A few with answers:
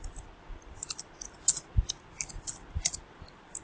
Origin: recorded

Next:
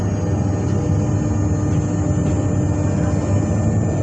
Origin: recorded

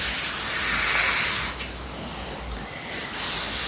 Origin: recorded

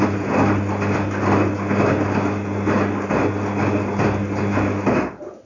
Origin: recorded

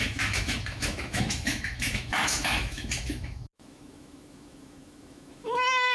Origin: remade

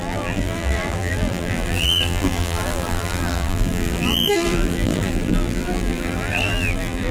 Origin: remade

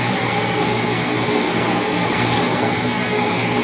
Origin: remade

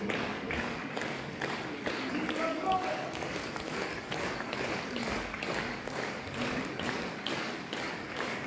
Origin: remade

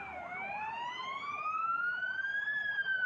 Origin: recorded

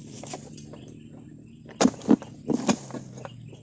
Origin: recorded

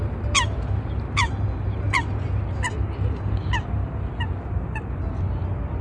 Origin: recorded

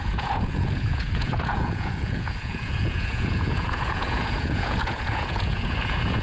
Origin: remade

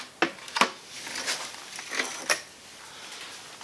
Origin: recorded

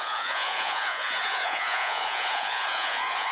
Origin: remade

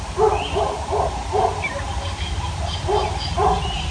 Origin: recorded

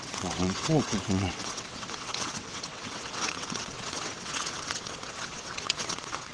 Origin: remade